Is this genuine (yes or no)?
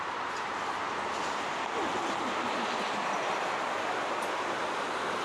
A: yes